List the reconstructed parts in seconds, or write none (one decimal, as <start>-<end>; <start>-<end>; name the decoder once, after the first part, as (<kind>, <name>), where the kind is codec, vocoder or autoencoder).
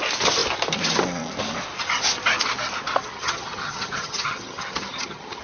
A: 3.1-5.4 (vocoder, HiFi-GAN)